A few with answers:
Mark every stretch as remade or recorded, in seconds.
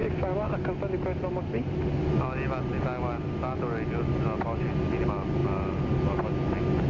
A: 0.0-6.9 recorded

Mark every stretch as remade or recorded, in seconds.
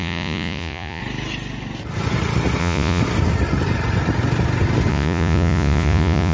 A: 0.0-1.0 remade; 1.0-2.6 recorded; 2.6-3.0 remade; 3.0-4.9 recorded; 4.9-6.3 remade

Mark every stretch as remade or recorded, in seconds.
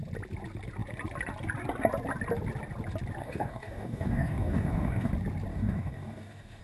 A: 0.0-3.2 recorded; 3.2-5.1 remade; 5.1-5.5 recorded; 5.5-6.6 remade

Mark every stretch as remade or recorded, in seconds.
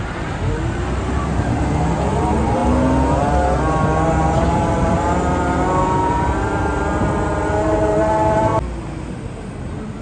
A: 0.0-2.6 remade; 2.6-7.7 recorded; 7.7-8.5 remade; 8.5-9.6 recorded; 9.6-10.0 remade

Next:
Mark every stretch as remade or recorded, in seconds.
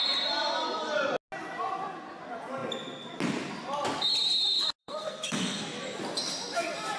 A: 0.0-4.8 recorded; 4.8-5.6 remade; 5.6-7.0 recorded